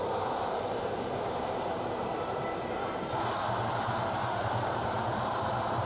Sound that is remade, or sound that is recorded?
remade